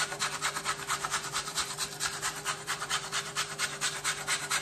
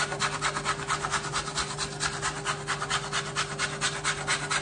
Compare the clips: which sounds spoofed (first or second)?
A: first